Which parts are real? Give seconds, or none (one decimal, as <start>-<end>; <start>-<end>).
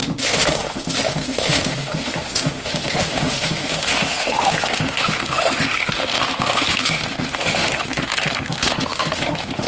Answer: none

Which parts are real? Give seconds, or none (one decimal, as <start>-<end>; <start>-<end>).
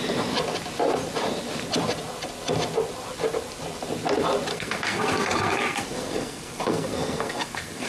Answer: 0.0-4.5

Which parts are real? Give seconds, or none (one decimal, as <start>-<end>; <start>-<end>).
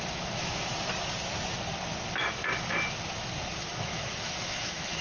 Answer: 0.7-3.7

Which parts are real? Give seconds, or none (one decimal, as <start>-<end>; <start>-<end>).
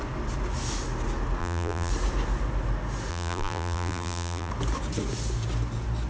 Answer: 0.0-1.4; 1.9-3.1; 4.5-6.1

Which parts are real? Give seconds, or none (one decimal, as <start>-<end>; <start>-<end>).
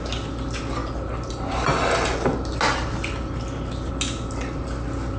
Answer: 0.0-5.2